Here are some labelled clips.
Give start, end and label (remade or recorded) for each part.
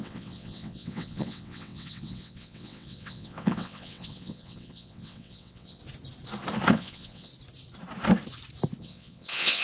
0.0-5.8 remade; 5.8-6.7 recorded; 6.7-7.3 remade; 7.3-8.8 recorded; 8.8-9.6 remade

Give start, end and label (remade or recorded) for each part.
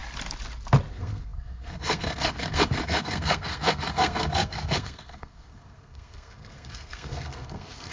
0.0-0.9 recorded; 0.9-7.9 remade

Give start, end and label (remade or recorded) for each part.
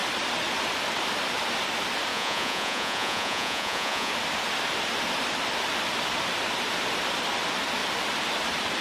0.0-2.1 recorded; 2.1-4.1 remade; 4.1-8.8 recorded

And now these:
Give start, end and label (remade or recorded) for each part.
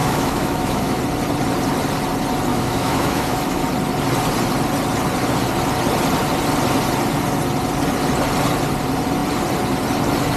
0.0-1.0 remade; 1.0-2.5 recorded; 2.5-3.6 remade; 3.6-10.4 recorded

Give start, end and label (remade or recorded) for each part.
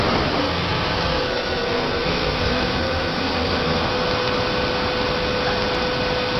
0.0-0.4 recorded; 0.4-3.9 remade; 3.9-6.4 recorded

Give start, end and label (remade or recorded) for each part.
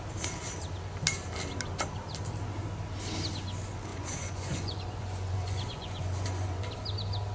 0.0-3.9 recorded; 3.9-6.6 remade; 6.6-7.3 recorded